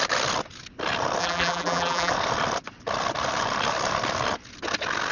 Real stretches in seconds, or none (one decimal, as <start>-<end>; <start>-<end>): 0.0-1.2; 2.1-5.1